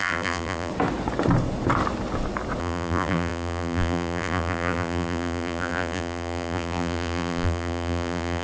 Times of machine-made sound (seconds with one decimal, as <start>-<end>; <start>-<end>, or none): 0.0-0.7; 2.6-8.4